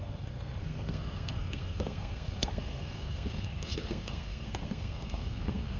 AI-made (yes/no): yes